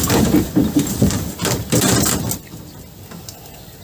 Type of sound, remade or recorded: recorded